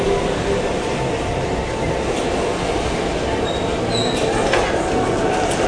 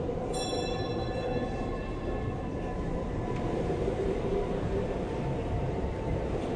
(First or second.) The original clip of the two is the first